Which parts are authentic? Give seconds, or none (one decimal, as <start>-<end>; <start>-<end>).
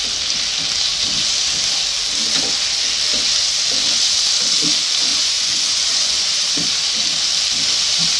0.0-5.1; 6.7-8.2